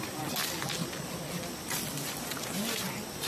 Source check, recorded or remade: recorded